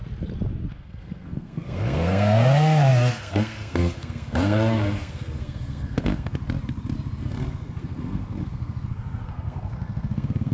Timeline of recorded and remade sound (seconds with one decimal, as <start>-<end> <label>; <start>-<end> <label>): 0.0-0.7 recorded; 0.7-6.4 remade; 6.4-7.2 recorded; 7.2-10.5 remade